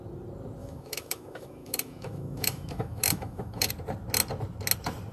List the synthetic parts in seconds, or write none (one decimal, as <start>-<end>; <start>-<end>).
0.6-3.7